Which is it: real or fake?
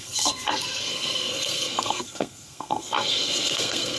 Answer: fake